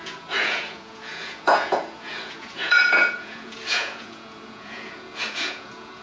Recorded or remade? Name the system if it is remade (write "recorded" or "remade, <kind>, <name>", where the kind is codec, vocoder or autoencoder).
remade, vocoder, Vocos